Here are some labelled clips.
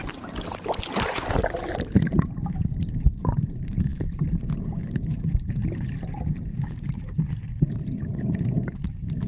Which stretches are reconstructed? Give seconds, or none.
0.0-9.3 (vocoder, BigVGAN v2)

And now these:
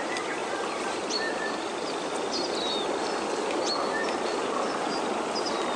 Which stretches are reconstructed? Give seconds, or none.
none

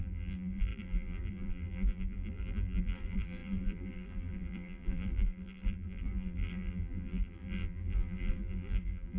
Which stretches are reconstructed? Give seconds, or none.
0.0-9.2 (vocoder, BigVGAN v2)

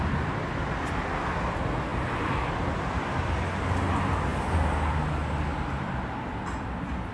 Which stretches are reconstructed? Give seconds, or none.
none

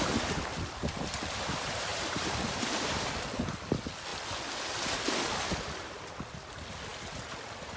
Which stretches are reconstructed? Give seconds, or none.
1.9-3.1 (vocoder, BigVGAN v2)

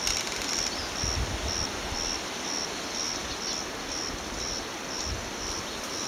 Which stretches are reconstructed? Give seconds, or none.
none

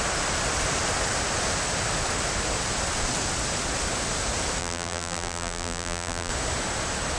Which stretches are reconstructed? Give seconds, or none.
4.6-6.3 (vocoder, BigVGAN v2)